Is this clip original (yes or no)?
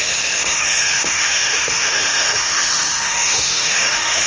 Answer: no